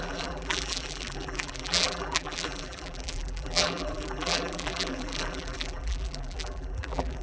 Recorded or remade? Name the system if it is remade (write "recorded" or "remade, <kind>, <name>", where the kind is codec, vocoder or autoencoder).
remade, vocoder, BigVGAN v2